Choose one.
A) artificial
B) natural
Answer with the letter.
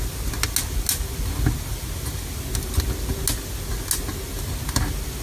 B